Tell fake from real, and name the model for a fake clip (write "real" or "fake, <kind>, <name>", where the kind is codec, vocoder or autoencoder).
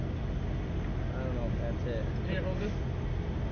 real